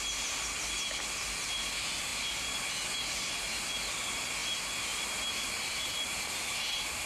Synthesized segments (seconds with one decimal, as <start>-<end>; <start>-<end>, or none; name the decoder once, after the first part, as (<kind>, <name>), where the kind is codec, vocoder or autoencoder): none